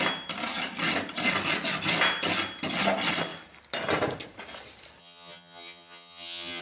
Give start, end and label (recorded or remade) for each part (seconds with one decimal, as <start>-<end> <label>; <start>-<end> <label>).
0.0-5.0 recorded; 5.0-6.6 remade